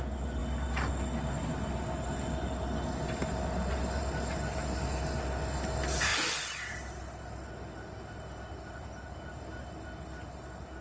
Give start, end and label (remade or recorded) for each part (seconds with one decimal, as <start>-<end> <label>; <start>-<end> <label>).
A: 0.0-10.8 recorded